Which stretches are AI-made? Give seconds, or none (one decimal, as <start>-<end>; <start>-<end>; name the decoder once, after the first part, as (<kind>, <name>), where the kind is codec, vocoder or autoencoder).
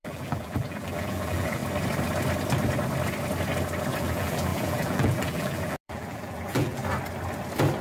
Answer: 0.0-1.6 (vocoder, BigVGAN v2); 4.0-6.8